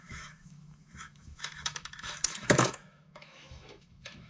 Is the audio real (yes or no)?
no